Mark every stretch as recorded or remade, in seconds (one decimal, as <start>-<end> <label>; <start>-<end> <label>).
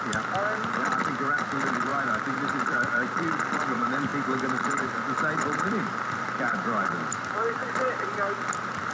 0.0-1.9 remade; 1.9-2.5 recorded; 2.5-4.1 remade; 4.1-5.4 recorded; 5.4-7.6 remade; 7.6-8.9 recorded